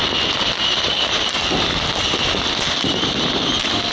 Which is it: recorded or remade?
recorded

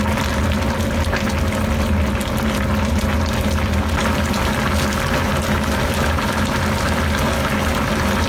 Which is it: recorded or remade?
recorded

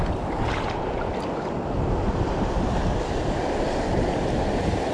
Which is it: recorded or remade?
recorded